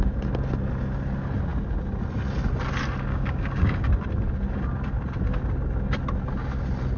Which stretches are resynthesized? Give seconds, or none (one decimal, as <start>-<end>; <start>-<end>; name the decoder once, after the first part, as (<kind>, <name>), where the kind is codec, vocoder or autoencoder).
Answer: 3.1-3.9 (codec, DAC)